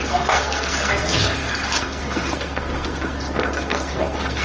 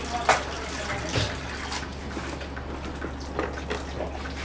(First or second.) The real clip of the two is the second